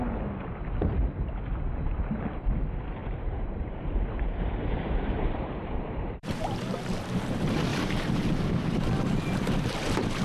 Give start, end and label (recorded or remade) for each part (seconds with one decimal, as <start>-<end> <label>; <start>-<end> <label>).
0.0-3.0 recorded; 3.0-6.4 remade; 6.4-7.7 recorded; 7.7-8.9 remade; 8.9-10.2 recorded